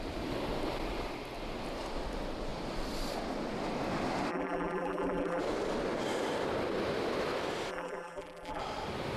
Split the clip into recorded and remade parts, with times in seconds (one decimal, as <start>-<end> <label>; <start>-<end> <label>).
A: 0.0-4.3 recorded; 4.3-5.4 remade; 5.4-7.7 recorded; 7.7-8.6 remade; 8.6-9.2 recorded